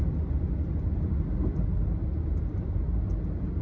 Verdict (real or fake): real